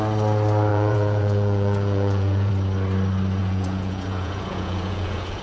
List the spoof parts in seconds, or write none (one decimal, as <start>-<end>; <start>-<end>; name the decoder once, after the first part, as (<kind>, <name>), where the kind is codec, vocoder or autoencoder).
0.7-2.5 (vocoder, Vocos); 3.4-5.4